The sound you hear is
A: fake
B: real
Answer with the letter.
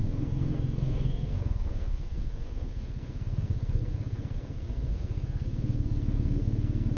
A